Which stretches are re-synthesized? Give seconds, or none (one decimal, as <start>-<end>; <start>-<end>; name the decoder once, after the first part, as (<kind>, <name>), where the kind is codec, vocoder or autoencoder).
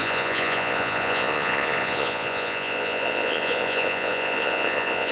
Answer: 0.0-5.1 (vocoder, Vocos)